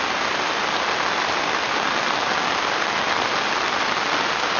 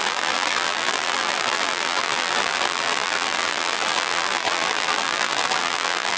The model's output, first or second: second